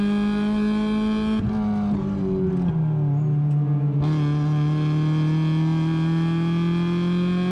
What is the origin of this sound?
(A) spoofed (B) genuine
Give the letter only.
B